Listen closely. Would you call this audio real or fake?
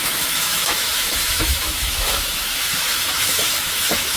fake